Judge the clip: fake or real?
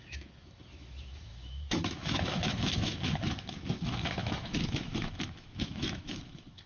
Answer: fake